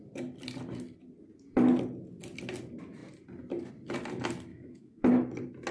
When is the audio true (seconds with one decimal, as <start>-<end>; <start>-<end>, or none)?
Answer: 0.0-4.5; 5.1-5.7